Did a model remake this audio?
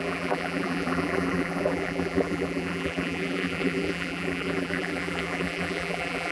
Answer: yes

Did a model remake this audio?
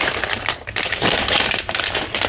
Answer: yes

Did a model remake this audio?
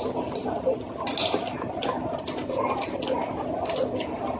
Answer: no